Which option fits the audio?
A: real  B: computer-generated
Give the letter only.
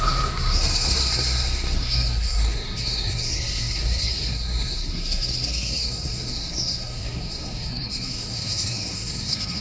B